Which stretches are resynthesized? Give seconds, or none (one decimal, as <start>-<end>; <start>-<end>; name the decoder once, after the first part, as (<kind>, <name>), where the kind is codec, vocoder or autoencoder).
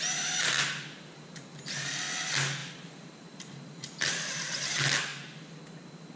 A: 2.6-4.2 (vocoder, BigVGAN v2)